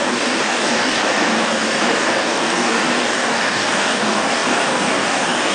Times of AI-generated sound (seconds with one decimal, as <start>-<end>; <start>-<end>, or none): 0.0-5.5